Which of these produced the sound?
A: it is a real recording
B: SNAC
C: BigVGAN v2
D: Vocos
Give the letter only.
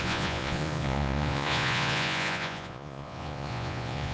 D